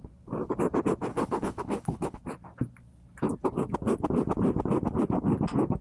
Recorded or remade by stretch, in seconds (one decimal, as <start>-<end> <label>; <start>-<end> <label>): 0.0-1.1 recorded; 1.1-2.2 remade; 2.2-5.8 recorded